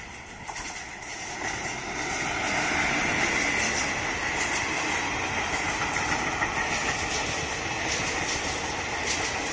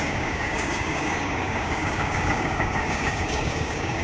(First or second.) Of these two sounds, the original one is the first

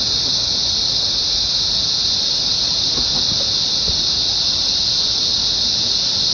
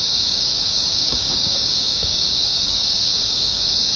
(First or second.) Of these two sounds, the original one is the first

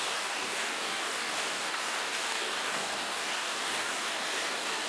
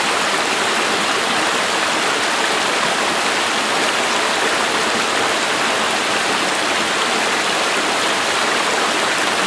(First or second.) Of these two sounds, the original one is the second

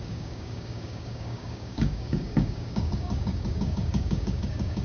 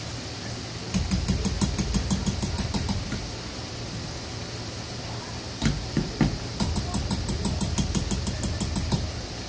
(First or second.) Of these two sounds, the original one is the second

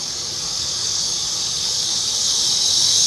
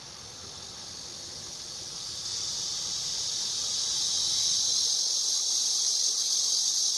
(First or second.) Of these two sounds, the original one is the second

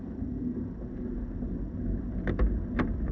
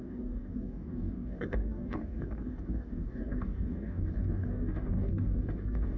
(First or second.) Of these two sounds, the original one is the first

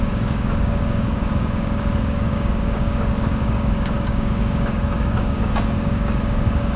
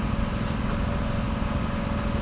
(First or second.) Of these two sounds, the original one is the second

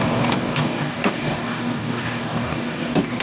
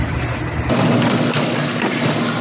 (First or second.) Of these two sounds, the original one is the second